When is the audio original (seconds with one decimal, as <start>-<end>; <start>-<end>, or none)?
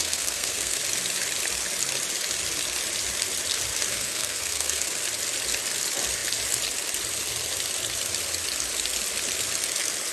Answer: 0.8-3.9; 4.9-10.1